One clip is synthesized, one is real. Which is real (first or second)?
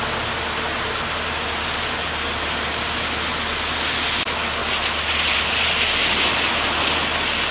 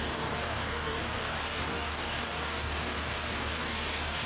first